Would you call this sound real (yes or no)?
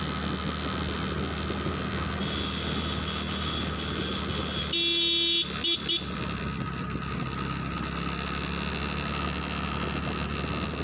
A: yes